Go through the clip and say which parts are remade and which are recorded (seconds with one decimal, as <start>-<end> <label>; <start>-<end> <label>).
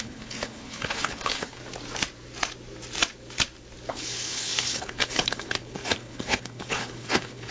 0.0-1.6 remade; 1.6-3.9 recorded; 3.9-7.5 remade